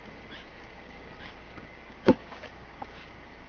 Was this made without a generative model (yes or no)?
no